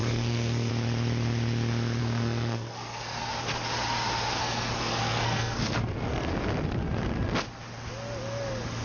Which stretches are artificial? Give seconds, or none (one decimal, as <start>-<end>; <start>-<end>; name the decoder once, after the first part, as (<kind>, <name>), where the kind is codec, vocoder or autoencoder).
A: 0.0-0.7 (codec, SNAC); 2.0-3.3; 4.4-6.3